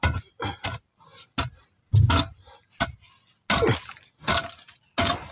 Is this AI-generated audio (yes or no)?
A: no